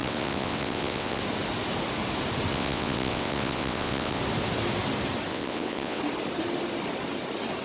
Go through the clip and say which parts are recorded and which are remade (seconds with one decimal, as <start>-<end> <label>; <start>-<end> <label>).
0.0-1.2 remade; 1.2-2.5 recorded; 2.5-4.2 remade; 4.2-5.3 recorded; 5.3-6.0 remade; 6.0-7.6 recorded